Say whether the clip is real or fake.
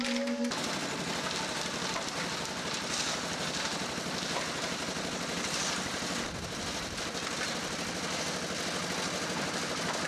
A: real